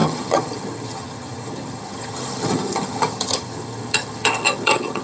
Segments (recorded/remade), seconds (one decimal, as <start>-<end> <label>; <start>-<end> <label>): 0.0-5.0 remade